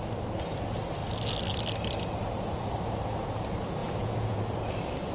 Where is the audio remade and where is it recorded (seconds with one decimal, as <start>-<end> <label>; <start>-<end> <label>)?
0.0-3.8 recorded; 3.8-4.4 remade; 4.4-5.1 recorded